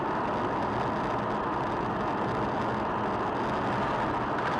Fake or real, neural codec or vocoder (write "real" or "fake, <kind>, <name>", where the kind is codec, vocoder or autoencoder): real